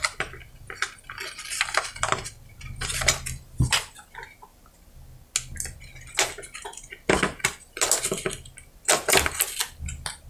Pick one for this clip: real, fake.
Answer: real